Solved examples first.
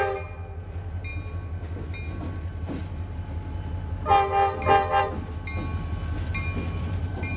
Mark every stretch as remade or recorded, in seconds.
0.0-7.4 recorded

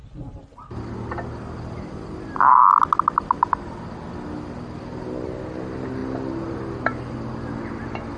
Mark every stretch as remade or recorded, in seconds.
0.0-8.2 recorded

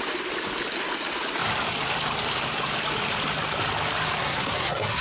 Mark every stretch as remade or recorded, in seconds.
0.0-4.2 recorded; 4.2-5.0 remade